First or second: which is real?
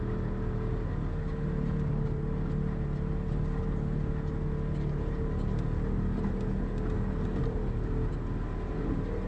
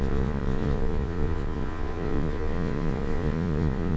first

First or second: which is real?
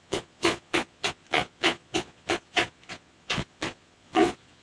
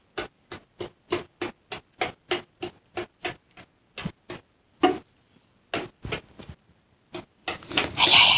second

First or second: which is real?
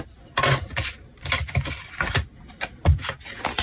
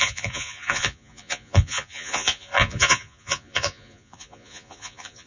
first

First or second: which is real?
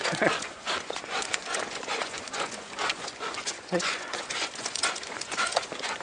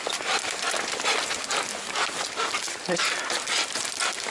second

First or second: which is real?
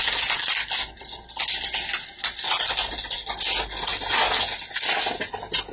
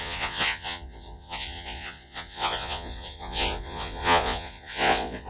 first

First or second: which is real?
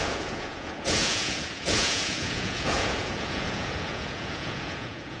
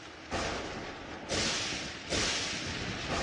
second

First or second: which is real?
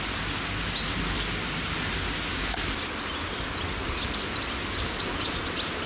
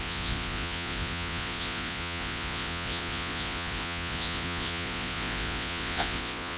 first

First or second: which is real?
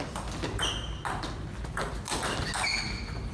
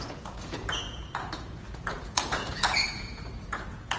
first